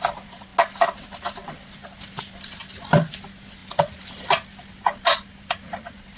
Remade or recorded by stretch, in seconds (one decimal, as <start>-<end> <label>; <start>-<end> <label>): 0.0-6.2 recorded